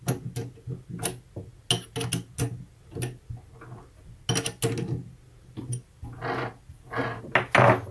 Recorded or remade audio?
recorded